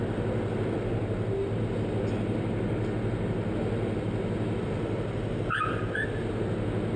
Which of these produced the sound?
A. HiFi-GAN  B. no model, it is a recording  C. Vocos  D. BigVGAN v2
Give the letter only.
B